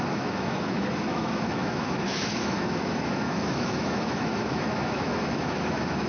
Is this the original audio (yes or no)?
no